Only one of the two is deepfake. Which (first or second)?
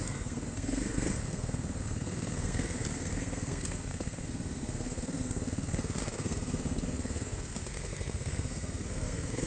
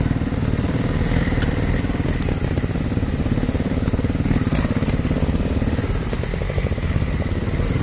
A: first